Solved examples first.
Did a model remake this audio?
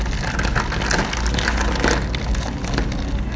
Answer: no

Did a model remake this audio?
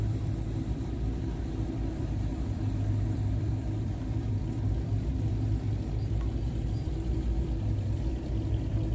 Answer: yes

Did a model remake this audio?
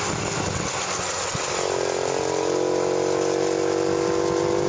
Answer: no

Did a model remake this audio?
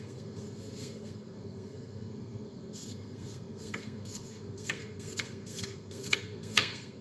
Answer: yes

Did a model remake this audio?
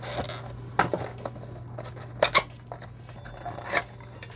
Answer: no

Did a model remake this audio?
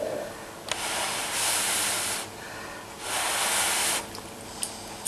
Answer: no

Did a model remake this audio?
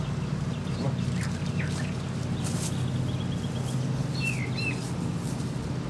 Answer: no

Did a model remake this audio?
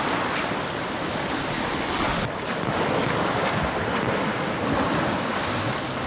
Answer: no